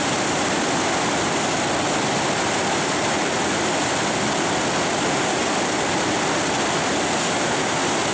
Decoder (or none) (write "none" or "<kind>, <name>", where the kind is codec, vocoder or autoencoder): none